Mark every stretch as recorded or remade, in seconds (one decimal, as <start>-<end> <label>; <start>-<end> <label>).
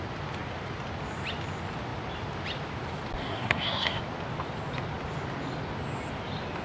0.0-3.2 recorded; 3.2-4.0 remade; 4.0-6.6 recorded